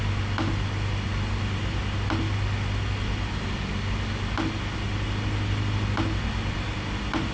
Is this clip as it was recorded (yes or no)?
yes